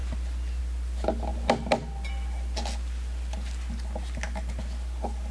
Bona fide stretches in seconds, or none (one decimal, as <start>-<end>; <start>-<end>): 0.0-5.3